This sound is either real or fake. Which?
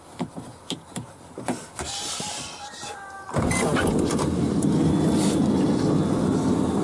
real